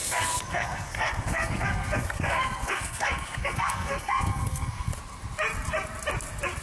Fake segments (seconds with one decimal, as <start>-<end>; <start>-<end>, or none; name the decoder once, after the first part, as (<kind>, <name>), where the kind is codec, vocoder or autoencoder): 0.0-4.9 (codec, SNAC)